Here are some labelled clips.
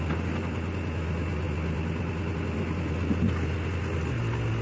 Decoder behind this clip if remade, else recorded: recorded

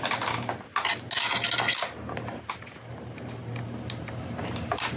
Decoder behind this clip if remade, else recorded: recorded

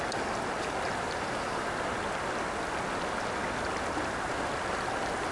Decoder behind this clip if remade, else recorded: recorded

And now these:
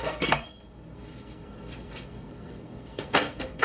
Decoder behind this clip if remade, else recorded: remade, codec, SNAC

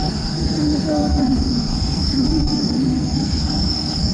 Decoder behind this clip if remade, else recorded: remade, codec, SNAC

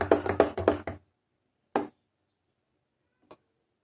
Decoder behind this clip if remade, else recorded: recorded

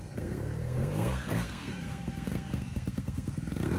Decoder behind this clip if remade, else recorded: remade, codec, SNAC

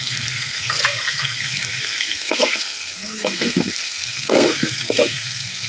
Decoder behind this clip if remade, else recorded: remade, codec, SNAC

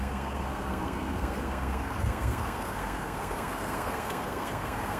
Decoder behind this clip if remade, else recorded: remade, codec, SNAC